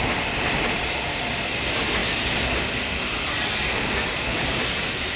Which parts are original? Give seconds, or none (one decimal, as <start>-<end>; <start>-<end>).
0.0-5.2